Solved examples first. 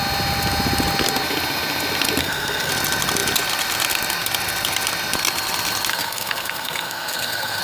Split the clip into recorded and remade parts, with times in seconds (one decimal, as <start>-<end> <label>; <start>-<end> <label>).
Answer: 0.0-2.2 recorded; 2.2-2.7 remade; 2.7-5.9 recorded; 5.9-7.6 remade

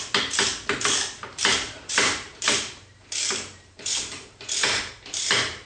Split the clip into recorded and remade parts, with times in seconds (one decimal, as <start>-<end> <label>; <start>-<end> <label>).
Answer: 0.0-1.5 recorded; 1.5-4.9 remade; 4.9-5.7 recorded

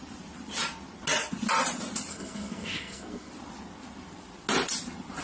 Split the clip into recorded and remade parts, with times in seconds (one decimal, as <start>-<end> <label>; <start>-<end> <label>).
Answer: 0.0-2.1 recorded; 2.1-3.3 remade; 3.3-5.2 recorded

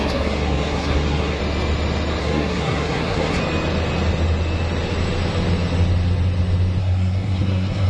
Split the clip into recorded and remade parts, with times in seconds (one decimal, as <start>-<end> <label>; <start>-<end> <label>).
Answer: 0.0-1.4 remade; 1.4-2.2 recorded; 2.2-3.4 remade; 3.4-6.8 recorded; 6.8-7.9 remade

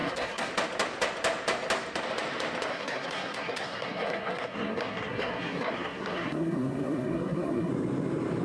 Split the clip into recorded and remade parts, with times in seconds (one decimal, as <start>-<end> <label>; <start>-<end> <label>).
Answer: 0.0-0.5 remade; 0.5-2.7 recorded; 2.7-7.7 remade; 7.7-8.4 recorded